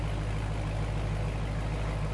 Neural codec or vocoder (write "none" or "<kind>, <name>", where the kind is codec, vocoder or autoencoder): none